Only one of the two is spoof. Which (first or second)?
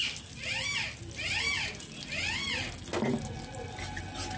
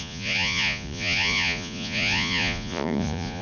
second